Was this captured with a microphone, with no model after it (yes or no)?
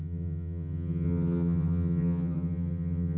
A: no